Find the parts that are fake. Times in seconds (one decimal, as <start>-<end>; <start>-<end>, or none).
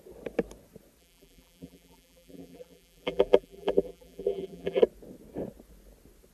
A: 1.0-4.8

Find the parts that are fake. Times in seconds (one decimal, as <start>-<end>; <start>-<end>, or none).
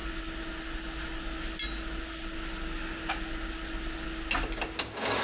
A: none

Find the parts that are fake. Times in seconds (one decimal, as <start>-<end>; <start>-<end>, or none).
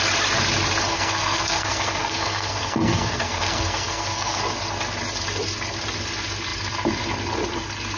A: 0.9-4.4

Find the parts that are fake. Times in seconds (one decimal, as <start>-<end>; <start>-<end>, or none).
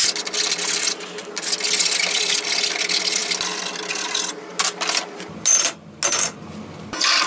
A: none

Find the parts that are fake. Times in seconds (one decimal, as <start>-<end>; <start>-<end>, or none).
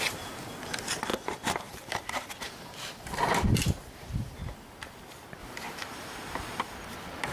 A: 1.1-2.3; 5.4-6.6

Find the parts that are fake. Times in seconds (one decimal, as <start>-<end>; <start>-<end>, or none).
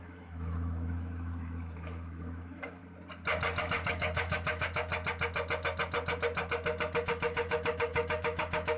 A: 0.0-2.8; 3.6-4.9; 7.0-8.8